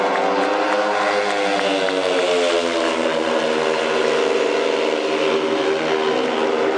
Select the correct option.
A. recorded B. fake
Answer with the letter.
A